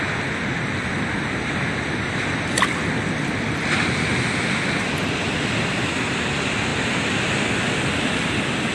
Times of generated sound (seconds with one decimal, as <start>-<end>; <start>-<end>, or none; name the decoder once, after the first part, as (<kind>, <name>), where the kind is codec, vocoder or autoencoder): none